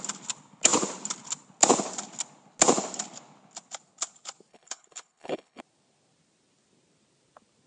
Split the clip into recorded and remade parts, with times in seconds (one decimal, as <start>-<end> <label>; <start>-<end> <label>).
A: 0.0-4.5 recorded; 4.5-5.6 remade; 5.6-7.7 recorded